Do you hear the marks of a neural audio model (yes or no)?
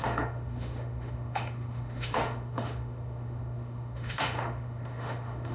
yes